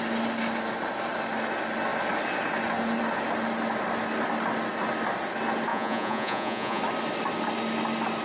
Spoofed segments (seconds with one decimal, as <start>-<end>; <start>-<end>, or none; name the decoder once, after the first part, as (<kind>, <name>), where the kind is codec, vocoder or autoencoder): 5.7-6.8 (vocoder, Vocos)